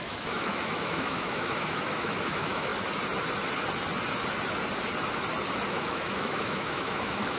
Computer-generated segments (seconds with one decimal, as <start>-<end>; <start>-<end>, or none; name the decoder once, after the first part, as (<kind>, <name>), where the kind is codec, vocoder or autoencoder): 0.0-2.7 (autoencoder, DAC-VAE); 5.7-7.4